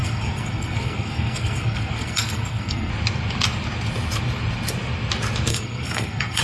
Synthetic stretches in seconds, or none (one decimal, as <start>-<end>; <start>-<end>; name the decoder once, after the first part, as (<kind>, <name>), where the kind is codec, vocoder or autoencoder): 0.0-2.9 (codec, SNAC); 5.5-6.4

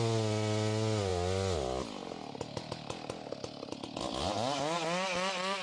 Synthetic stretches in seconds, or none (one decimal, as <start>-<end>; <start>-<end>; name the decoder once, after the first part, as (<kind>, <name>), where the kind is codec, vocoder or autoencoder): none

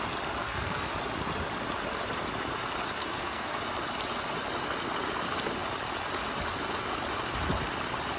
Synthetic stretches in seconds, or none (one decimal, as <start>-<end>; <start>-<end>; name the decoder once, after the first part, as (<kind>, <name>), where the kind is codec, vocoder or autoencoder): 0.4-0.9 (codec, SNAC); 3.0-3.6

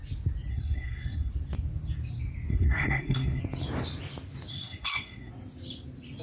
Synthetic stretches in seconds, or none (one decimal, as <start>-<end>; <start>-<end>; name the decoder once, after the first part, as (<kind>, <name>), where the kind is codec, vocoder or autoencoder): 0.5-1.3 (codec, SNAC); 2.5-3.4; 4.5-5.3